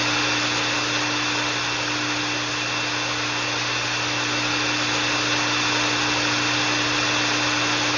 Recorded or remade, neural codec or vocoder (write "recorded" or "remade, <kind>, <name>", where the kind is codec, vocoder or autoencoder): recorded